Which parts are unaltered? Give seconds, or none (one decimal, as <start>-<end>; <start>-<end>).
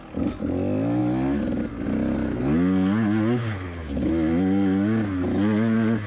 0.0-3.4; 4.1-6.1